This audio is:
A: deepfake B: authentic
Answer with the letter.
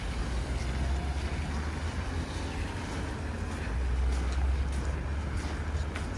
B